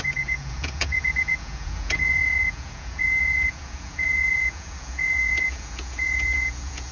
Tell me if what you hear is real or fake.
fake